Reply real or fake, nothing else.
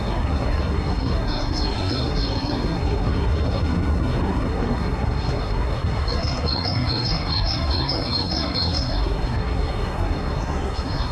fake